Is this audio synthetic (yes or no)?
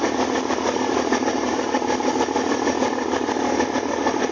no